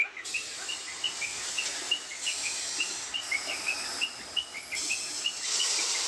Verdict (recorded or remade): recorded